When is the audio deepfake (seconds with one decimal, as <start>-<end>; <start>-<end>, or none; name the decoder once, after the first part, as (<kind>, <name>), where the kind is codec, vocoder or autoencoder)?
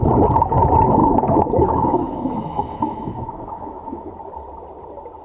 1.0-4.1 (autoencoder, DAC-VAE)